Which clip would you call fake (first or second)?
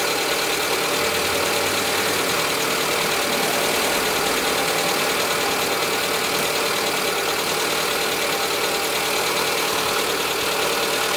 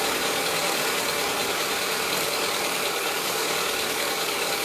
second